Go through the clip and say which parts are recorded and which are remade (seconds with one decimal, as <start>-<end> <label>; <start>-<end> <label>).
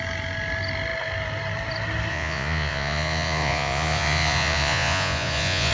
0.0-2.1 recorded; 2.1-5.7 remade